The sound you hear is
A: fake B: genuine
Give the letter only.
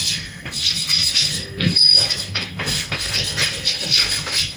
A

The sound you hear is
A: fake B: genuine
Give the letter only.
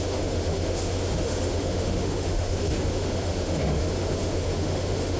A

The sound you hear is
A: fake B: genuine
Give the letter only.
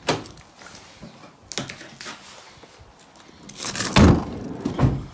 B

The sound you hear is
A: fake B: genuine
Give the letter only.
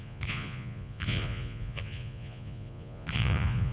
A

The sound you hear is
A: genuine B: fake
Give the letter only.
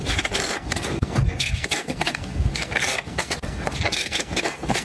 B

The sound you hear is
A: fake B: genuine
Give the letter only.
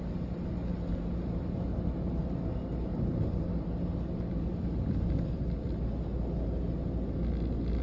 B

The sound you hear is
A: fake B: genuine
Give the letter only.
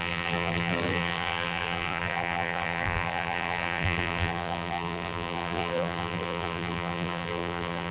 A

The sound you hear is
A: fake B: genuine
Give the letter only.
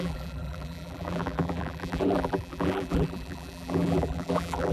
A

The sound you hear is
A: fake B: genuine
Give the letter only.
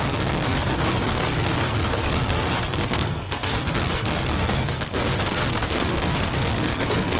A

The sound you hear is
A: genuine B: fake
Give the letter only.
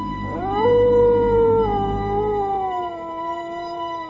A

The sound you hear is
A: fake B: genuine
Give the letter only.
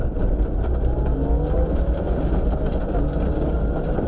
B